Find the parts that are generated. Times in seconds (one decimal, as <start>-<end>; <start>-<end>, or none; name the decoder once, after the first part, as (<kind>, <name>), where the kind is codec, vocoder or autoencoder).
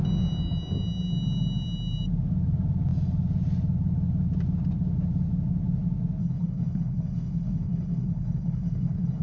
6.2-9.2 (codec, HILCodec)